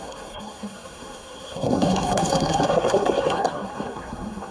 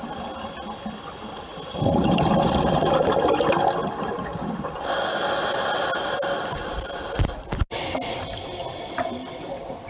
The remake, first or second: first